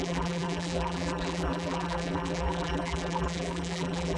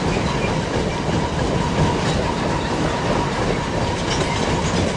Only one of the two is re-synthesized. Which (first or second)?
first